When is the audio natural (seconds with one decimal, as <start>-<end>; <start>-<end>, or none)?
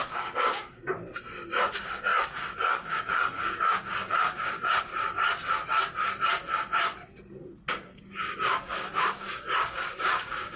0.8-1.7; 4.9-7.7